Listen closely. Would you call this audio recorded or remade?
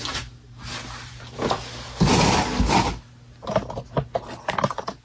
recorded